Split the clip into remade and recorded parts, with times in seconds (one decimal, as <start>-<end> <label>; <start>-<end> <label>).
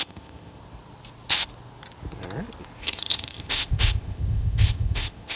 0.0-0.6 remade; 0.6-2.8 recorded; 2.8-5.4 remade